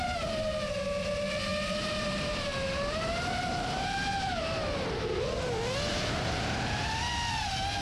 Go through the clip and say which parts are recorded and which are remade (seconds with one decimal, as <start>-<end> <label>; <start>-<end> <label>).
0.0-1.5 recorded; 1.5-5.2 remade; 5.2-5.9 recorded; 5.9-7.1 remade; 7.1-7.8 recorded